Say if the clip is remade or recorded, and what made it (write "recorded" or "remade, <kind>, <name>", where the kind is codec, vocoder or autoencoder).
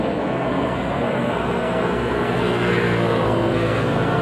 remade, codec, SNAC